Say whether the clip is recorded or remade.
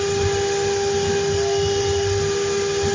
recorded